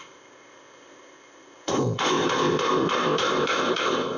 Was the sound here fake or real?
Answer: fake